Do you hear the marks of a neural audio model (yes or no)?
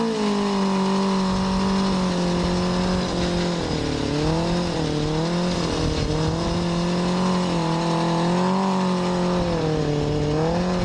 no